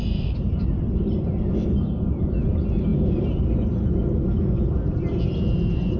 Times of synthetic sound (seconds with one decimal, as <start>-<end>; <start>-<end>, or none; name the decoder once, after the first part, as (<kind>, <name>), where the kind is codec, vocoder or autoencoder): none